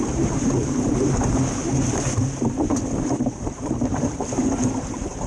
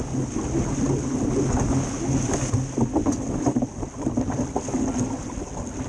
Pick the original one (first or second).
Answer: second